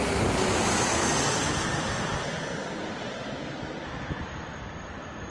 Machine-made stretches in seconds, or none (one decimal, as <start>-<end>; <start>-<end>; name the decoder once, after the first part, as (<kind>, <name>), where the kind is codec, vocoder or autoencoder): none